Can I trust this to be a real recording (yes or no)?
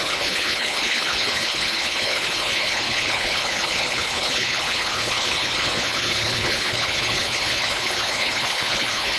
no